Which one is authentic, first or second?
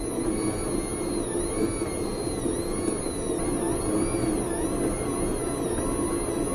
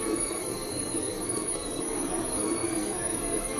first